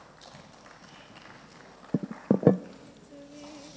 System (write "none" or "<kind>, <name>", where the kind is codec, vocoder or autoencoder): none